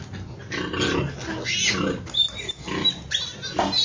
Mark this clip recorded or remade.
recorded